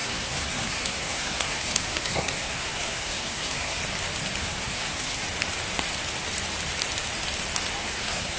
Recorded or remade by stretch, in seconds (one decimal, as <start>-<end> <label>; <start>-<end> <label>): 0.0-3.8 remade; 3.8-4.4 recorded; 4.4-5.2 remade; 5.2-7.8 recorded; 7.8-8.4 remade